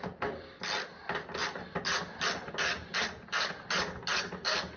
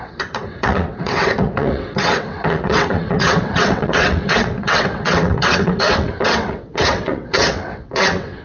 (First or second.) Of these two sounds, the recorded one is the first